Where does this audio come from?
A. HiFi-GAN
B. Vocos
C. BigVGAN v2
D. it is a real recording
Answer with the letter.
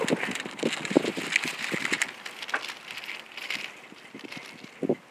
D